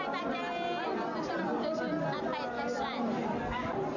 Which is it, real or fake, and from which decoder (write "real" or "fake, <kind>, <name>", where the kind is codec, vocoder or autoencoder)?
real